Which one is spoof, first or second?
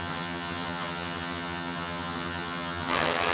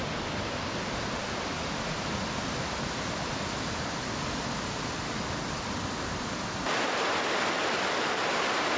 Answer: first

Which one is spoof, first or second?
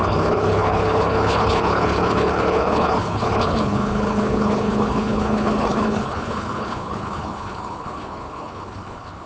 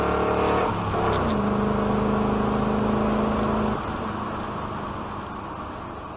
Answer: first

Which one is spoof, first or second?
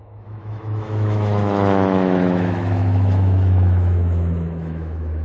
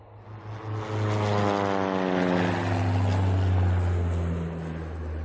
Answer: first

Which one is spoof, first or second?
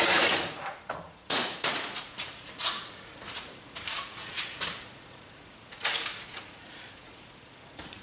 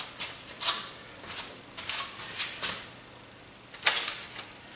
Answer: first